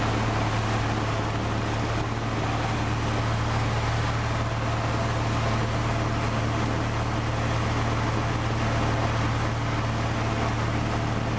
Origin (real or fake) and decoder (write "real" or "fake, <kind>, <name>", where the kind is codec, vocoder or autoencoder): real